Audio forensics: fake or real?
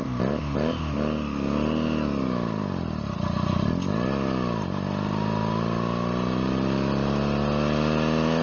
real